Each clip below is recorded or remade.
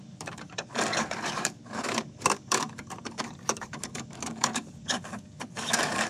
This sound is remade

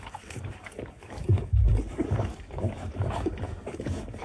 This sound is remade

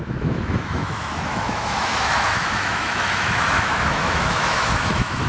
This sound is remade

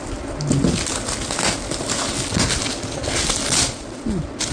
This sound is recorded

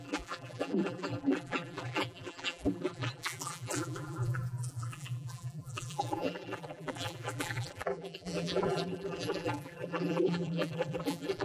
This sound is remade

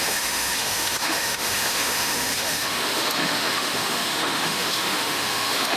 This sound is remade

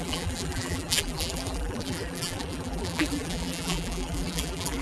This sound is remade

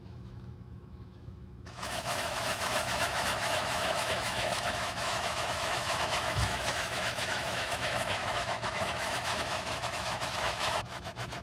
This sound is remade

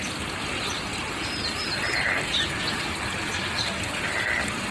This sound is recorded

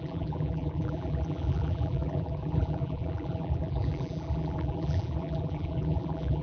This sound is remade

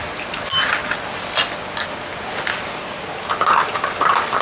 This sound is recorded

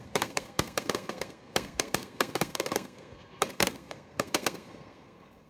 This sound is remade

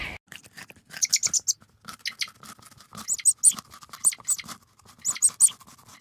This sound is recorded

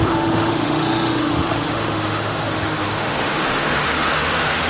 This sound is remade